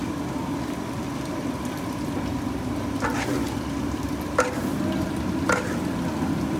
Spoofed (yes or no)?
no